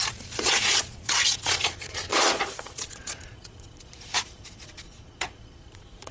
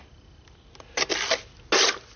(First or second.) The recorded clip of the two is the second